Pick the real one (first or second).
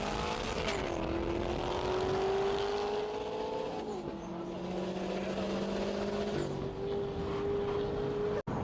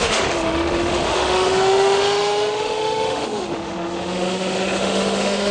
first